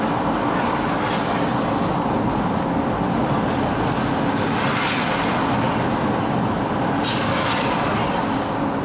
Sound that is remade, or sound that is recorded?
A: recorded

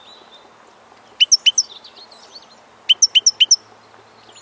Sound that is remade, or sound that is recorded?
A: recorded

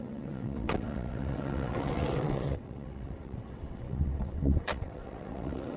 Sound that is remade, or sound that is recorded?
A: remade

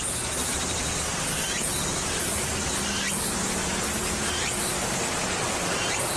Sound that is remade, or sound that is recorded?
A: recorded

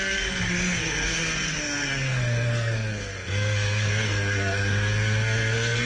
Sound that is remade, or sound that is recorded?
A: remade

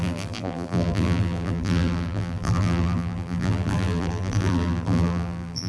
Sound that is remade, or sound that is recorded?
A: remade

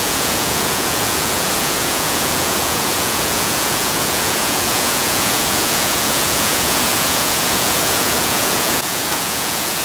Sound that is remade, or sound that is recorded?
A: remade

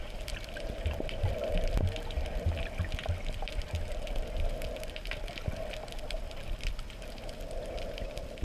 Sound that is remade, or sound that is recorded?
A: recorded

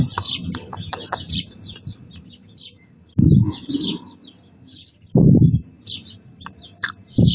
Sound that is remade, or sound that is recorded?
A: remade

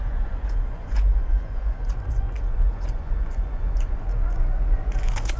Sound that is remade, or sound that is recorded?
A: remade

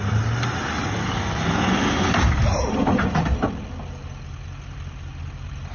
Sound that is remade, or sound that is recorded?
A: recorded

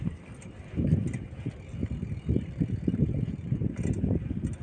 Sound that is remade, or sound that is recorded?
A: recorded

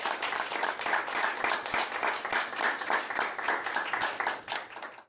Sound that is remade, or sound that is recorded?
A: recorded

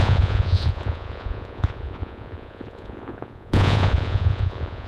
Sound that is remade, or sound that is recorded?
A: remade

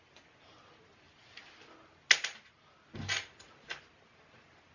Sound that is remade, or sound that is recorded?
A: recorded